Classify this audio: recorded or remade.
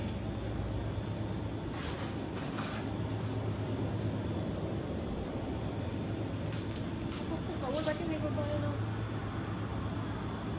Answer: recorded